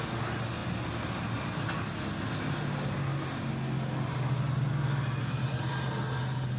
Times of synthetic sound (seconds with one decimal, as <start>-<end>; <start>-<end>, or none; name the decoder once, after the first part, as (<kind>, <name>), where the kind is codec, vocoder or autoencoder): none